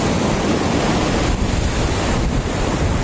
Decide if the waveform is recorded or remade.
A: recorded